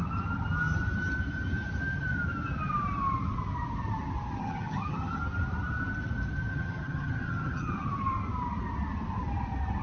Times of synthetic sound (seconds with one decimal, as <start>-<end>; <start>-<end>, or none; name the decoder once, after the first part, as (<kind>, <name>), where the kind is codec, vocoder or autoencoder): 4.4-5.2 (vocoder, HiFi-GAN); 6.5-7.9